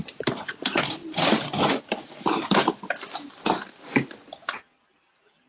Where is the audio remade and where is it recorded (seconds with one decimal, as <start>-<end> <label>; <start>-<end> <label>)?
0.0-1.0 recorded; 1.0-3.8 remade; 3.8-5.5 recorded